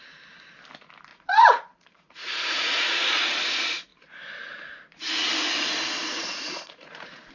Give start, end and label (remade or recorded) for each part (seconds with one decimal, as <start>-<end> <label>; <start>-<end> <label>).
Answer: 0.0-1.1 recorded; 1.1-3.3 remade; 3.3-6.0 recorded; 6.0-7.3 remade